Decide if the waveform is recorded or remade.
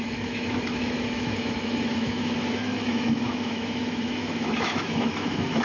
remade